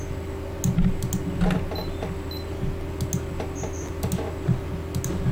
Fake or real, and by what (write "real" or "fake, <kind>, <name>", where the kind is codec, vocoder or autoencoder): real